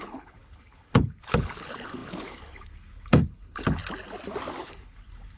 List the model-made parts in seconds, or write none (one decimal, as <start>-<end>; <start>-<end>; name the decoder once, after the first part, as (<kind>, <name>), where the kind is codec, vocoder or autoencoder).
0.0-3.8 (codec, HILCodec); 4.6-5.4